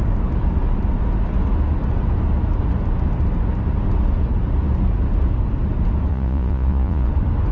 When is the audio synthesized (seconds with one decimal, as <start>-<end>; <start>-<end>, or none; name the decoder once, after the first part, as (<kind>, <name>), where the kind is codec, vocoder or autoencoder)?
6.1-7.1 (vocoder, Vocos)